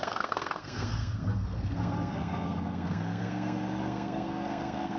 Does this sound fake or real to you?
fake